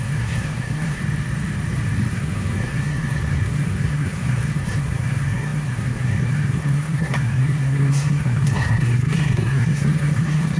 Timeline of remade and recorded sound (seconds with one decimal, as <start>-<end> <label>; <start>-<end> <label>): 0.0-1.0 remade; 1.0-2.1 recorded; 2.1-10.6 remade